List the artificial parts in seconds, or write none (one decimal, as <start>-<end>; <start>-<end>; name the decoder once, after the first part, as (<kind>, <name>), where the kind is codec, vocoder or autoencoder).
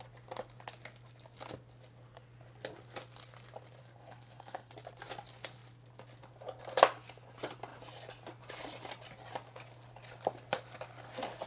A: 3.8-4.7 (codec, SNAC)